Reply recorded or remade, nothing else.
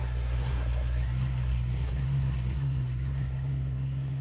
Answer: remade